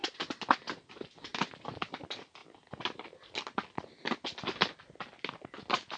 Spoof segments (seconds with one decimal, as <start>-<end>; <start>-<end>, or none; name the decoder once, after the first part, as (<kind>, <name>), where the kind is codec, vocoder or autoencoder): none